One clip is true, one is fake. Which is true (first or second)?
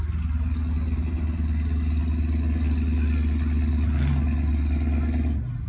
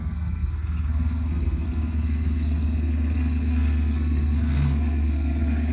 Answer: first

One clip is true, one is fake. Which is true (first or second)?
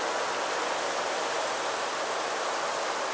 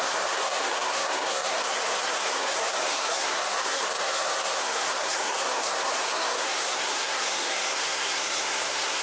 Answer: first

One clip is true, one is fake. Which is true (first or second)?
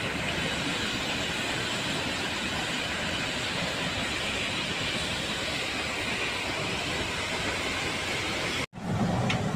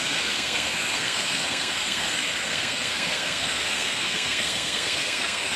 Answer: first